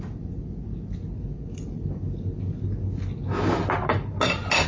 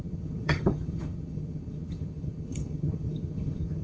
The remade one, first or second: second